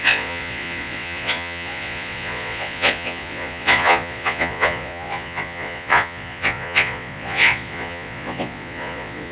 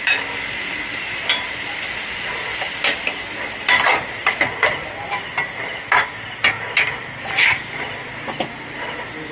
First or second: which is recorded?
second